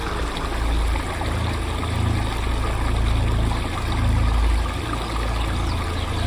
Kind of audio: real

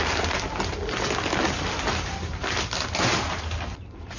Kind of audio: real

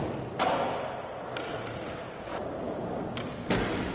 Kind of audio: real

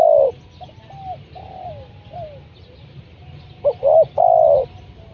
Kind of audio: real